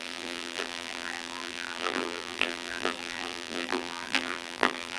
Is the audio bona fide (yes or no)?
no